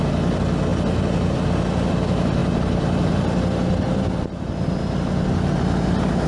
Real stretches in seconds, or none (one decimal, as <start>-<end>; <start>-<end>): 0.0-0.7; 1.9-2.4; 5.0-6.3